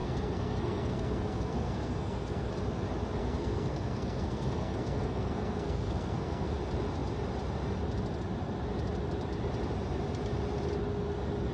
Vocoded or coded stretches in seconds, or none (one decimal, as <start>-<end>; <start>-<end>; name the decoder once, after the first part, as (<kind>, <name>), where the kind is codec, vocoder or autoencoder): 0.0-2.5 (codec, SNAC); 3.2-6.6